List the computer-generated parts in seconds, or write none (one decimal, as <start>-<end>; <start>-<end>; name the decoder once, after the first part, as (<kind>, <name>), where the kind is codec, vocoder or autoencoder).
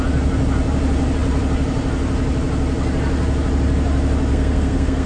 4.3-5.1 (codec, SNAC)